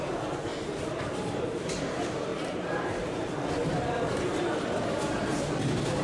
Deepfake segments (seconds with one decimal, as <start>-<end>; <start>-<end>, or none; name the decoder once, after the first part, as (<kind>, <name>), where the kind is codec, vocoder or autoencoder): 0.5-1.8 (vocoder, BigVGAN v2); 2.3-3.2; 3.6-4.3